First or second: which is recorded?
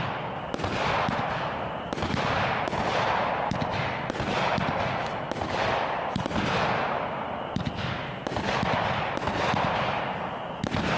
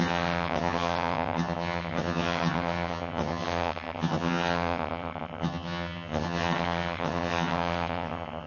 first